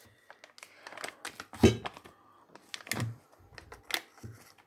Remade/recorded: recorded